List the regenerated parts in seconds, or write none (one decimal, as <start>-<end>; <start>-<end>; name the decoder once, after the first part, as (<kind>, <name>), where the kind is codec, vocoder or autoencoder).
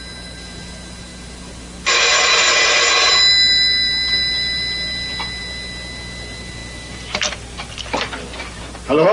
none